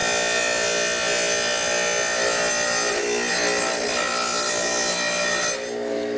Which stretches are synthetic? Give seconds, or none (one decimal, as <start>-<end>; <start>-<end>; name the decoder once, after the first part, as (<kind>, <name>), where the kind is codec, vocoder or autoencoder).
none